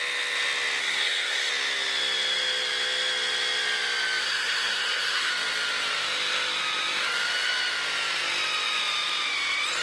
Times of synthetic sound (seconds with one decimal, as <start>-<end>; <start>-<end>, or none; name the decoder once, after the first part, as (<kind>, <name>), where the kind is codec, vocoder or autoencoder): 0.8-1.5 (codec, SNAC); 4.2-5.3